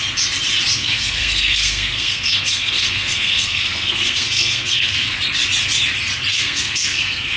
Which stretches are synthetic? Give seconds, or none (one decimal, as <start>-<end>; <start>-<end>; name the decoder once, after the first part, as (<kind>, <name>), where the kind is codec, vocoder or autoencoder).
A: 0.8-5.2 (codec, SNAC); 6.3-7.4